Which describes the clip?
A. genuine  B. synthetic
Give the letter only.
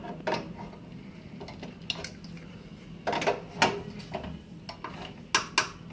A